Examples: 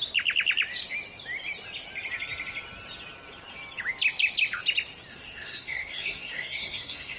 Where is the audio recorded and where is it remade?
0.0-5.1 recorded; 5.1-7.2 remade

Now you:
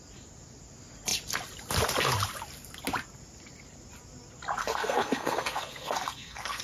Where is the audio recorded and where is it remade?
0.0-4.6 recorded; 4.6-6.6 remade

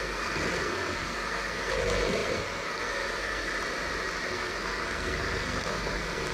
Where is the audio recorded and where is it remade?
0.0-3.5 remade; 3.5-4.3 recorded; 4.3-6.3 remade

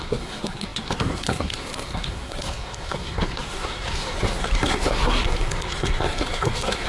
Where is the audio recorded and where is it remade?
0.0-6.9 remade